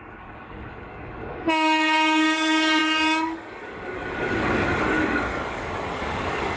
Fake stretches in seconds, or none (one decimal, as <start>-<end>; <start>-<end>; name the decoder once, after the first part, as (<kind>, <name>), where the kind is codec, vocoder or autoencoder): 0.0-6.6 (codec, DAC)